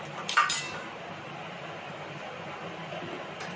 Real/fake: real